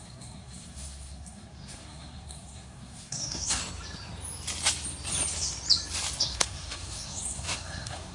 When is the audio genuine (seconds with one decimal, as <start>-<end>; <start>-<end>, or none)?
3.6-6.2